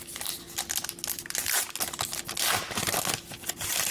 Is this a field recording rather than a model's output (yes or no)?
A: yes